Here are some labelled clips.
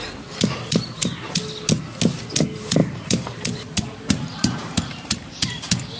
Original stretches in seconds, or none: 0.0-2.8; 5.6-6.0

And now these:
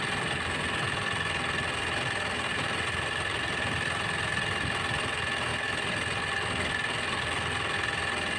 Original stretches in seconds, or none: 0.0-2.5; 3.4-5.5; 6.2-8.4

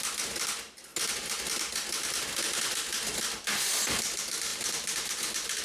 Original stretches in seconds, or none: 0.0-4.5